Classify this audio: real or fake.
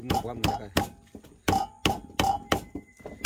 real